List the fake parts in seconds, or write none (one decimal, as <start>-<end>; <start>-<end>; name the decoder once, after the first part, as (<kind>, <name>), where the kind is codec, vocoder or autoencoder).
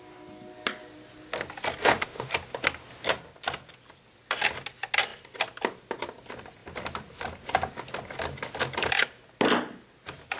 1.8-2.3 (autoencoder, DAC-VAE)